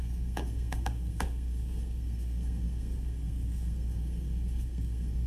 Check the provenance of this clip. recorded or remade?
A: remade